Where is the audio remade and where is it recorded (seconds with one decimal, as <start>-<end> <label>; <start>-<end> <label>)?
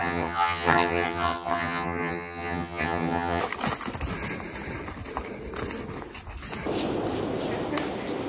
0.0-3.4 remade; 3.4-8.3 recorded